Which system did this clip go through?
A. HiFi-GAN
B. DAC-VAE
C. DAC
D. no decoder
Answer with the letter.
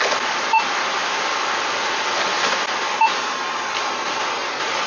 D